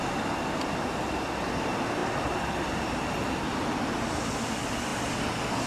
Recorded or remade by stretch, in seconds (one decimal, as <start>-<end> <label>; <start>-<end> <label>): 0.0-5.7 recorded